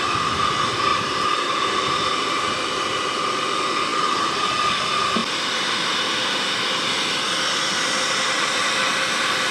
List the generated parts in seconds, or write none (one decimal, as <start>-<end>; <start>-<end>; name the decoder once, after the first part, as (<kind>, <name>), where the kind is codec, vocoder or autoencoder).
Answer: 0.9-1.6 (vocoder, BigVGAN v2); 3.9-4.5